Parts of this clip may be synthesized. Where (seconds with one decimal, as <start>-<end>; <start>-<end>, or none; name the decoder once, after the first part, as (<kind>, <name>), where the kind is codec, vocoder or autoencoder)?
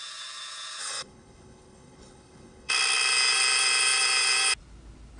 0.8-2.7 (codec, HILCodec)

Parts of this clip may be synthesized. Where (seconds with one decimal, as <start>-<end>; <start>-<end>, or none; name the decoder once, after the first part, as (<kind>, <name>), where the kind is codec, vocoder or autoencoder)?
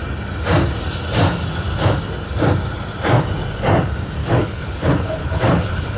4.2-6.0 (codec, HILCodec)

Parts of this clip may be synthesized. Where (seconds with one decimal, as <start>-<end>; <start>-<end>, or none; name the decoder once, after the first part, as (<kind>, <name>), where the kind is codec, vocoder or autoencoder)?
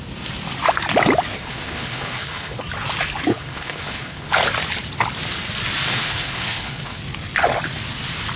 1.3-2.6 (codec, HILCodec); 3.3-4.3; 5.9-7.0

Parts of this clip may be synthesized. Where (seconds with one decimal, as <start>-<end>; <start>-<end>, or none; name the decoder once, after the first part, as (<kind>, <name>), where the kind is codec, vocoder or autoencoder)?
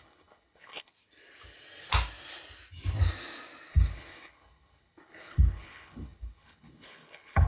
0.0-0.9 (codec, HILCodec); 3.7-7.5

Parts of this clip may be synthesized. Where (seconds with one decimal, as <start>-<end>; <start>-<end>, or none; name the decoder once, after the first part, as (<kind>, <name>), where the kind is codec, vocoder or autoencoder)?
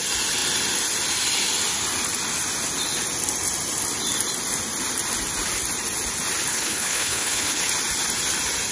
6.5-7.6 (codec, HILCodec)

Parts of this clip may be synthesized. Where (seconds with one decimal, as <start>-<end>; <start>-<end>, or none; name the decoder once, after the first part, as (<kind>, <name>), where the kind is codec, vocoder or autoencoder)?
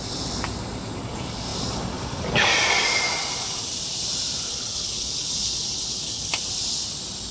4.5-6.3 (codec, HILCodec)